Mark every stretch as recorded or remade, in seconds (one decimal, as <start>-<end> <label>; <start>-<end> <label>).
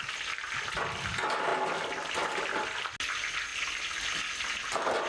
0.0-5.1 recorded